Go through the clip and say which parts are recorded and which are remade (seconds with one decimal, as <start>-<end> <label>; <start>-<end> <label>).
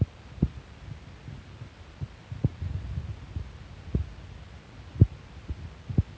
0.0-6.2 recorded